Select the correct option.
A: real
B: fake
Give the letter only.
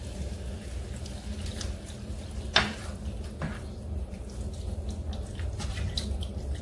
A